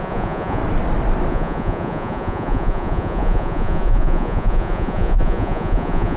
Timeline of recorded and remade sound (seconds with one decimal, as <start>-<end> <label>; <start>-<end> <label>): 0.0-0.6 remade; 0.6-1.3 recorded; 1.3-6.2 remade